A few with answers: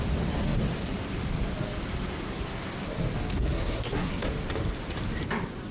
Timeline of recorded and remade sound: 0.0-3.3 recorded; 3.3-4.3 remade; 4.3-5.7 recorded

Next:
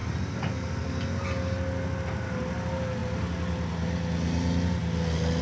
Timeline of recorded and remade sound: 0.0-5.4 recorded

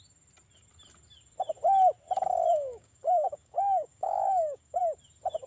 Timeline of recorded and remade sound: 0.0-2.5 recorded; 2.5-4.8 remade; 4.8-5.5 recorded

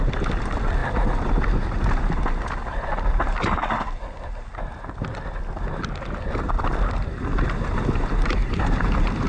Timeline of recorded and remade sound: 0.0-9.3 recorded

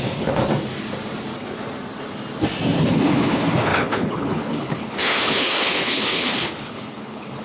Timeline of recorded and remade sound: 0.0-0.4 remade; 0.4-2.8 recorded; 2.8-7.4 remade

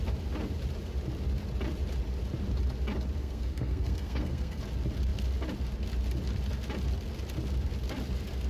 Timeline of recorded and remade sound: 0.0-3.2 recorded; 3.2-4.6 remade; 4.6-8.5 recorded

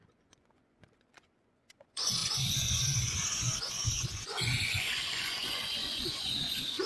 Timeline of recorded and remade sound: 0.0-6.9 remade